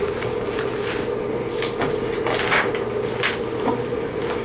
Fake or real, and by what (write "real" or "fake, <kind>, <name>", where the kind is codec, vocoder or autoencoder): real